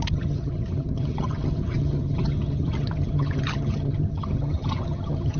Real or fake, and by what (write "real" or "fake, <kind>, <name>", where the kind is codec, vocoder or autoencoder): fake, vocoder, HiFi-GAN